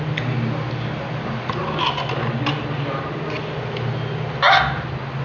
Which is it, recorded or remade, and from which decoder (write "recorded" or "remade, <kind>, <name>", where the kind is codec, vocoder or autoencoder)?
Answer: recorded